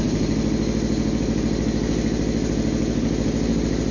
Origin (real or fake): real